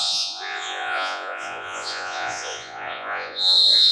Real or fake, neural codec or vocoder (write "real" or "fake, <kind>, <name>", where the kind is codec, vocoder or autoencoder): fake, vocoder, Vocos